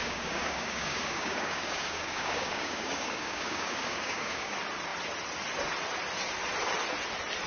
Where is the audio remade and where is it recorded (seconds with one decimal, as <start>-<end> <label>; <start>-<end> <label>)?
0.0-4.5 remade; 4.5-7.5 recorded